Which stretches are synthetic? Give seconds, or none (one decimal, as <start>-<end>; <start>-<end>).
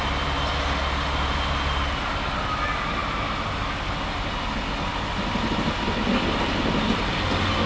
none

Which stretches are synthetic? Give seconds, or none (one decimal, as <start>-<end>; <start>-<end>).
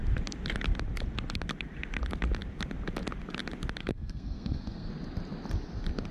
3.8-4.9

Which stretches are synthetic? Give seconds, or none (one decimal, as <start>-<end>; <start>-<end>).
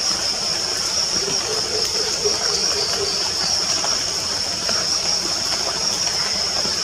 0.0-2.6; 4.3-6.8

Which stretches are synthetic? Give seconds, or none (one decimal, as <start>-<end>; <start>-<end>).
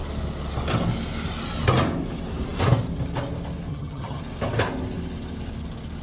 3.7-4.2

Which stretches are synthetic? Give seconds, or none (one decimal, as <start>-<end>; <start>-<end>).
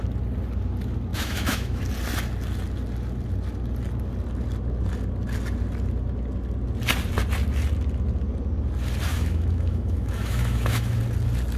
1.1-1.8; 9.1-11.0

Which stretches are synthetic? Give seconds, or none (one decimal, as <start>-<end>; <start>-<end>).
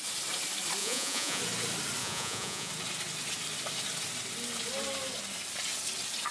0.8-1.4; 2.0-2.7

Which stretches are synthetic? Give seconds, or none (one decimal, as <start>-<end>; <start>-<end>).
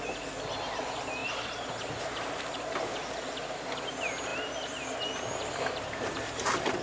none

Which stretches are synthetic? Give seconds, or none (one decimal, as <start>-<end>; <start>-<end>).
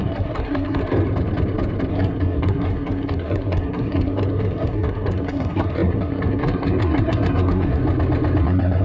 0.0-0.8; 1.9-7.8; 8.4-8.8